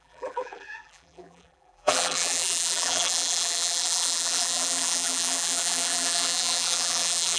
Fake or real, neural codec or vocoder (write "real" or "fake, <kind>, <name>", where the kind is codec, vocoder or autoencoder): fake, vocoder, BigVGAN v2